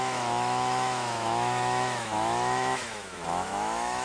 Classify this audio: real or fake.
fake